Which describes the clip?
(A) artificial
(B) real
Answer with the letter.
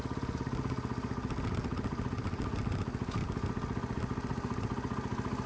B